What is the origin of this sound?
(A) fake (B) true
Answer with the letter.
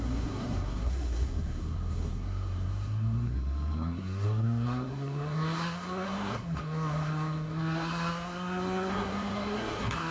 A